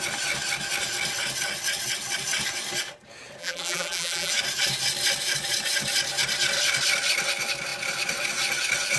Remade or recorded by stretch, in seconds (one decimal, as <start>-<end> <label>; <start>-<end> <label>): 0.0-3.4 recorded; 3.4-4.3 remade; 4.3-9.0 recorded